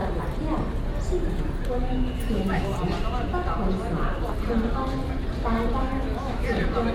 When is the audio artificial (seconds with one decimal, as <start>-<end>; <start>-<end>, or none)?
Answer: 2.3-2.7; 5.8-6.9